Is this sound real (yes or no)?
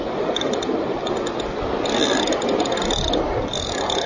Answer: yes